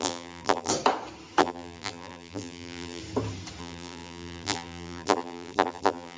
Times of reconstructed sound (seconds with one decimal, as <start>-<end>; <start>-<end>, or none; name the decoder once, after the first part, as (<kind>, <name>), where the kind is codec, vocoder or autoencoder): 0.0-0.7 (vocoder, BigVGAN v2); 1.4-3.0; 3.6-6.2